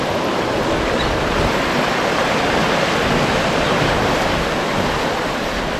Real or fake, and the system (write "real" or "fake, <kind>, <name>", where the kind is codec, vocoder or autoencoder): real